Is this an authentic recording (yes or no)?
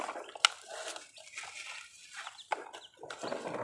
yes